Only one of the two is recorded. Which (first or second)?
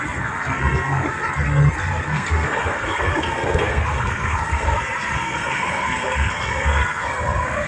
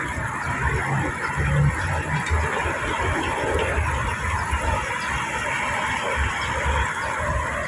second